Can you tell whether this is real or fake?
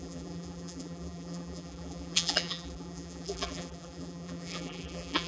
fake